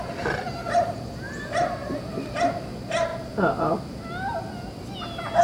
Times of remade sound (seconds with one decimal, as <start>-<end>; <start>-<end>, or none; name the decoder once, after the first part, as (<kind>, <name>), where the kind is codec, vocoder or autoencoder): none